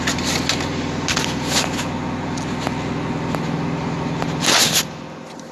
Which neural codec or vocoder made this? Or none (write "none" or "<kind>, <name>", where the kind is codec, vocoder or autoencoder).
none